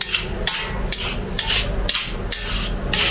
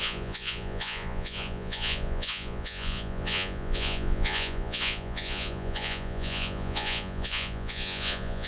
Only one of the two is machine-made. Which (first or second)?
second